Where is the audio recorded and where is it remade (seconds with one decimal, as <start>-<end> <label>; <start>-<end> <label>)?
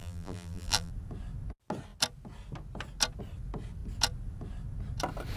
0.0-0.9 remade; 0.9-5.4 recorded